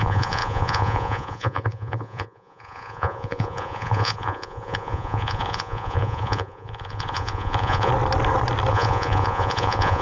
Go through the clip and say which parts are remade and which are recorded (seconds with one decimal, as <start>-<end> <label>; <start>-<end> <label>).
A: 0.0-7.9 remade; 7.9-8.7 recorded; 8.7-10.0 remade